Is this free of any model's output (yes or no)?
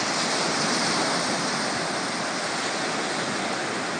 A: yes